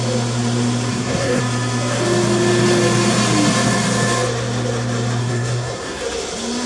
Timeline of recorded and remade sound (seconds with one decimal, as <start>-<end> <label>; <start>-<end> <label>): 0.0-0.9 recorded; 0.9-1.4 remade; 1.4-5.2 recorded; 5.2-6.0 remade; 6.0-6.7 recorded